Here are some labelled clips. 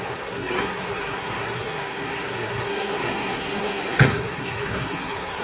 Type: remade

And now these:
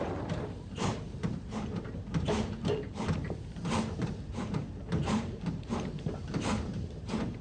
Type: remade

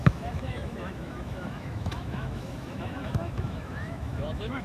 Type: remade